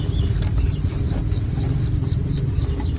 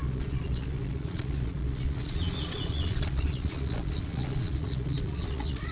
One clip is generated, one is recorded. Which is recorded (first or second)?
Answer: first